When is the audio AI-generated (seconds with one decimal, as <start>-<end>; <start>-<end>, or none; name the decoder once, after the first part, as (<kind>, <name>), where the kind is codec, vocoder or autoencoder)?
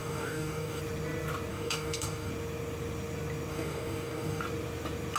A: 0.0-0.8 (codec, DAC); 1.5-2.3; 3.5-4.4